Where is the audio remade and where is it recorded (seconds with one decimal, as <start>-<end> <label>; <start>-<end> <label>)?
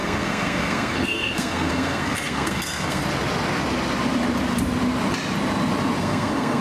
0.0-3.0 remade; 3.0-6.0 recorded; 6.0-6.6 remade